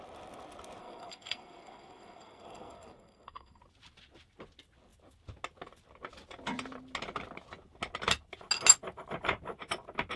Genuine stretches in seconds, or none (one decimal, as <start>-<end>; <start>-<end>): 0.0-0.8; 3.6-10.2